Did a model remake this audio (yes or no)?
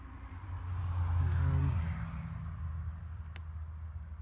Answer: no